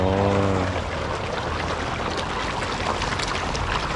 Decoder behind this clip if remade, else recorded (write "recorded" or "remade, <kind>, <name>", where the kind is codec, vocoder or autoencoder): recorded